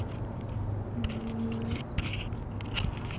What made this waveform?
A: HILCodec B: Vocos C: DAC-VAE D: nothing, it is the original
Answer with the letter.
D